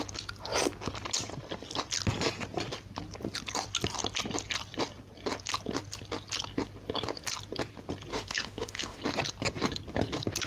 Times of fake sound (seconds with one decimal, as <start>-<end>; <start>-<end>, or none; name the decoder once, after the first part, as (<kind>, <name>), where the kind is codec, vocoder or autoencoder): 8.1-9.0 (autoencoder, DAC-VAE)